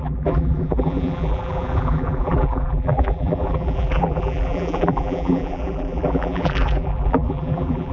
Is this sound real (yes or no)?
no